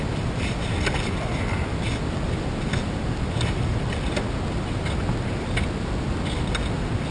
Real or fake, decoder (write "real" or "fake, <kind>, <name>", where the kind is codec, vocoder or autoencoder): real